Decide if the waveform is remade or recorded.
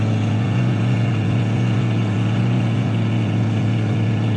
remade